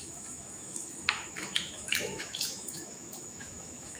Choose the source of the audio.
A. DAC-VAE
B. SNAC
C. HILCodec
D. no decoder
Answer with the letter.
A